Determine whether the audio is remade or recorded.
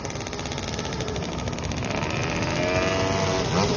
recorded